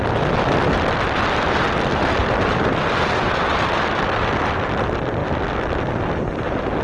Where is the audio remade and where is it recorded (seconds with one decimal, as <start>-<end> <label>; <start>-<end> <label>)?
0.0-2.2 recorded; 2.2-4.3 remade; 4.3-6.8 recorded